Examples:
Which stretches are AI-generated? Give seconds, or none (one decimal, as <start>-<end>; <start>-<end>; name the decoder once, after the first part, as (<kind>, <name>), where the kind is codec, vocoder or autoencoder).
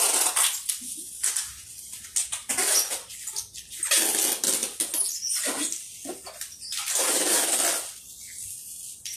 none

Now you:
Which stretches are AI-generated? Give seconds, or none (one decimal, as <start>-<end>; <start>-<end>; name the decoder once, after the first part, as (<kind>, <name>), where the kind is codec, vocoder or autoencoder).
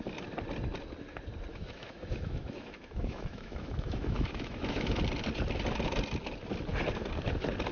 1.5-5.0 (autoencoder, DAC-VAE)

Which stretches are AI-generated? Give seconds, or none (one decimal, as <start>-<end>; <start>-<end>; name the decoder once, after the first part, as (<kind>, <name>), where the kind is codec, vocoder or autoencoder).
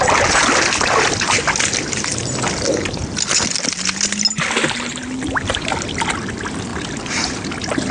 none